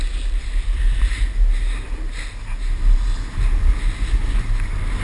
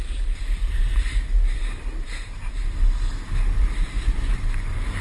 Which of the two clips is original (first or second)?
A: first